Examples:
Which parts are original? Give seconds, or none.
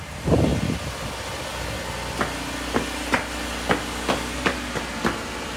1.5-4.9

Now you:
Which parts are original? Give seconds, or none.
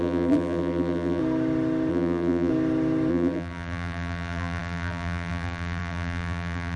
1.2-1.9; 2.5-3.1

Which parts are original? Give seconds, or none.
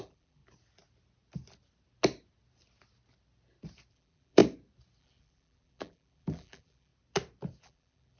0.4-3.9; 4.4-5.0; 6.9-7.6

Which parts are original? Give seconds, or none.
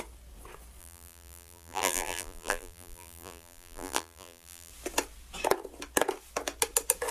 0.0-0.8; 4.7-7.1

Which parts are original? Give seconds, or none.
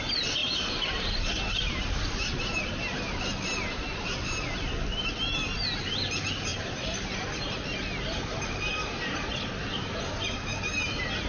0.0-0.4; 2.6-6.5; 7.5-11.3